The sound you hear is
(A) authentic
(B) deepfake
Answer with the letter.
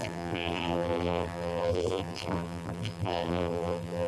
B